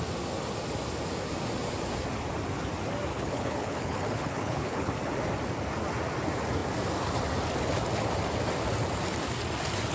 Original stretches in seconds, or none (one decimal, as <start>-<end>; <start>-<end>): 0.0-3.1; 4.9-9.9